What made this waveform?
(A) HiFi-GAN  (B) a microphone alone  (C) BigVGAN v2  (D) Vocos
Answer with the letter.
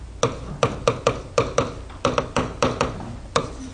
B